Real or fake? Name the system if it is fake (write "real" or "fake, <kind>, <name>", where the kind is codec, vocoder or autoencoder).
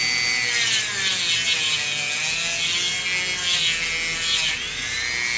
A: real